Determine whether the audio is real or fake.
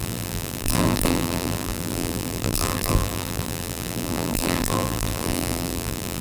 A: fake